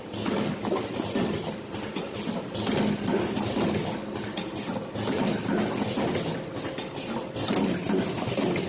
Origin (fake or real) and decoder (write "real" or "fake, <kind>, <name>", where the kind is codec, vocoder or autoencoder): real